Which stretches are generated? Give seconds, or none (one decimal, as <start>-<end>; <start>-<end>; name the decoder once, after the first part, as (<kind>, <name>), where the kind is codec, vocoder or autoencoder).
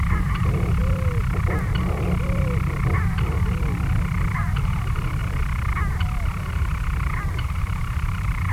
0.0-0.8 (vocoder, BigVGAN v2); 4.4-5.2; 6.5-8.5